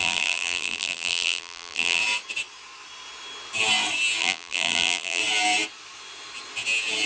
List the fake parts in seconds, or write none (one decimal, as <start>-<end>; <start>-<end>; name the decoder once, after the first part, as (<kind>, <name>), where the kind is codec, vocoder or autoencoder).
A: 0.0-2.0 (vocoder, BigVGAN v2); 4.2-5.2